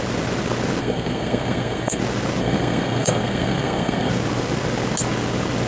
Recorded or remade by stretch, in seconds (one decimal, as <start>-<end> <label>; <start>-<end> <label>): 0.0-0.8 recorded; 0.8-2.0 remade; 2.0-2.4 recorded; 2.4-4.1 remade; 4.1-5.7 recorded